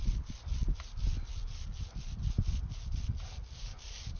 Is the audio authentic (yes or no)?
yes